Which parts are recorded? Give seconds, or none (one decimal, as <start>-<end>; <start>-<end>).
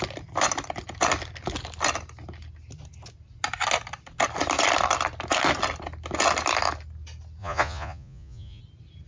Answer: 0.0-7.4; 8.6-9.1